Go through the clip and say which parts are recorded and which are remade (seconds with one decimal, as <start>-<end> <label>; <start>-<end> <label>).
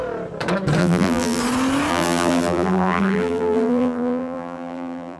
0.0-0.8 recorded; 0.8-1.4 remade; 1.4-1.9 recorded; 1.9-5.2 remade